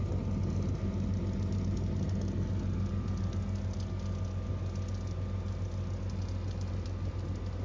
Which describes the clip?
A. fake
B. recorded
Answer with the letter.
B